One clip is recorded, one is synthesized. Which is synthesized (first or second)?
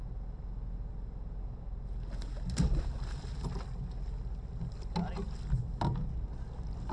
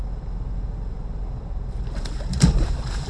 second